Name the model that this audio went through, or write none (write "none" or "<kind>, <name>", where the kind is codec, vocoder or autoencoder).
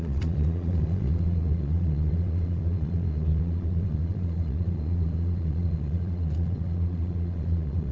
vocoder, Vocos